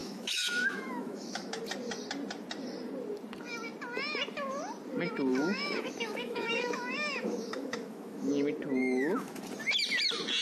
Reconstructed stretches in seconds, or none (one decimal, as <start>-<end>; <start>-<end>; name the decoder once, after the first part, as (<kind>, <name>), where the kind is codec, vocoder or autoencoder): 0.0-1.6 (autoencoder, DAC-VAE); 5.3-8.3; 8.8-9.4

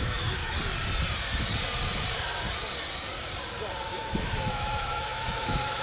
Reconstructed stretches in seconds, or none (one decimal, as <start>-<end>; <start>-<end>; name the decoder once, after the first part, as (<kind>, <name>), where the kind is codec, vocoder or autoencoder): 0.0-0.4 (autoencoder, DAC-VAE); 3.9-5.8

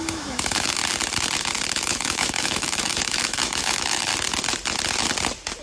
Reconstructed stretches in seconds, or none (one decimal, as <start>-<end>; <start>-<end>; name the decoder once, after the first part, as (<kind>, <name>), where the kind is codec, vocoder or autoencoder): 0.0-0.8 (autoencoder, DAC-VAE); 1.7-4.1

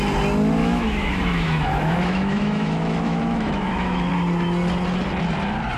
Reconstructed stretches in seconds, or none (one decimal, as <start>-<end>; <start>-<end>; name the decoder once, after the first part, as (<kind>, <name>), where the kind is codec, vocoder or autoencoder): 0.6-4.1 (autoencoder, DAC-VAE)

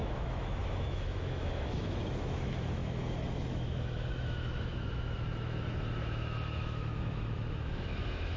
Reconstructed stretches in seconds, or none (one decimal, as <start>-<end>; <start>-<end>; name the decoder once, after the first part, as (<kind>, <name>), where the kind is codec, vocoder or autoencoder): 0.0-8.4 (autoencoder, DAC-VAE)

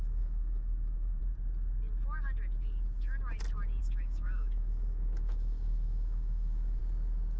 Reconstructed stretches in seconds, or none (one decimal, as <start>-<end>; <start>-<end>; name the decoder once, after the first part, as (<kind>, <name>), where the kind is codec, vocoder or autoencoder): 0.0-1.2 (autoencoder, DAC-VAE); 3.8-6.8

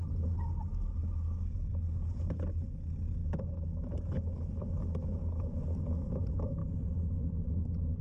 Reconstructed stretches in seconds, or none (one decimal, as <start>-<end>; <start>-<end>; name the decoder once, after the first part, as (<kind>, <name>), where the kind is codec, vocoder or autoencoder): 1.0-1.7 (autoencoder, DAC-VAE); 3.2-5.4; 6.6-7.1